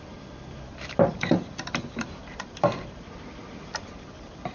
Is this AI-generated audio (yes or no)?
yes